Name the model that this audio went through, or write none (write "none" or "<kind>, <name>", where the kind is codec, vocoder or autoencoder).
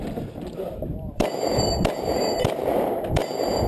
vocoder, BigVGAN v2